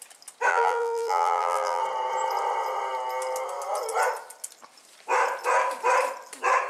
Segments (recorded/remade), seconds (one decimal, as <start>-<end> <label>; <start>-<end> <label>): 0.0-0.5 recorded; 0.5-1.8 remade; 1.8-6.7 recorded